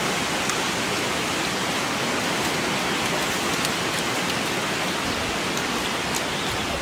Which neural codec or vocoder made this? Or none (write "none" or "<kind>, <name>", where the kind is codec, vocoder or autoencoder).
none